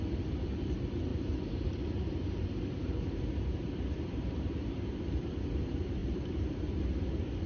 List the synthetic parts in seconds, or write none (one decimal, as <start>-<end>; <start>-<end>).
1.1-4.9; 6.0-6.6